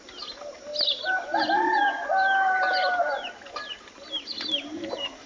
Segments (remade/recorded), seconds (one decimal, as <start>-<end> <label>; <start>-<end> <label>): 0.0-5.3 remade